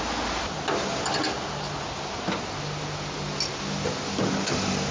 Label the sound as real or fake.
real